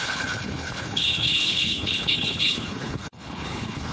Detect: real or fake fake